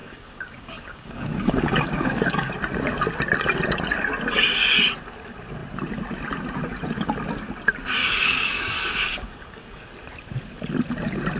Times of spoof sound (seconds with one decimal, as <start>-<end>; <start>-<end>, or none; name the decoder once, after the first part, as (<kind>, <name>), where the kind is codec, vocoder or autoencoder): 0.0-2.5 (codec, DAC); 8.0-9.9